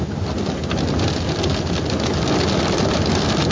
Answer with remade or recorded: recorded